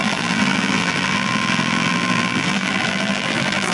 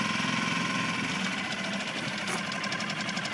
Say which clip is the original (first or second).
second